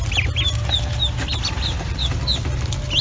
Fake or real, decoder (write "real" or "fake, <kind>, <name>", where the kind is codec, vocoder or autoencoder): real